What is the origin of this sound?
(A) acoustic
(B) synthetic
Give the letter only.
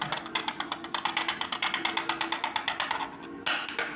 A